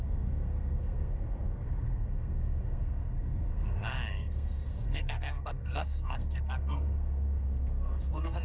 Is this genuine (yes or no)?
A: no